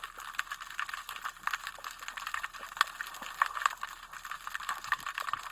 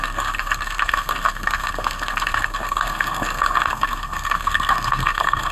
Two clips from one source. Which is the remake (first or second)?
second